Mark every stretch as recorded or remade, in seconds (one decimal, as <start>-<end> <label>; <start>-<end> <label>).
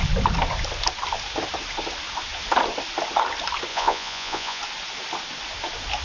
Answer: 0.0-3.7 recorded; 3.7-4.6 remade; 4.6-6.0 recorded